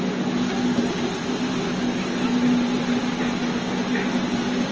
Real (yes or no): yes